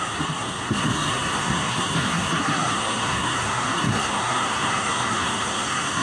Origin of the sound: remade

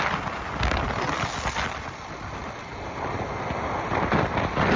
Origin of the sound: recorded